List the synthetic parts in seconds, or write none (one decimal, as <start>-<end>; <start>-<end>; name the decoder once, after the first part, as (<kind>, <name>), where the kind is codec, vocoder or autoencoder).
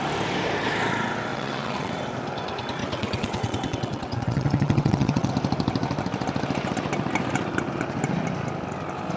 1.3-1.9 (vocoder, WaveNeXt); 2.8-5.3